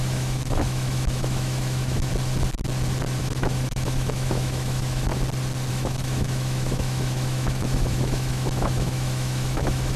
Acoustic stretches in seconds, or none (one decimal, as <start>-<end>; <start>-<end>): 2.1-3.2; 5.1-5.7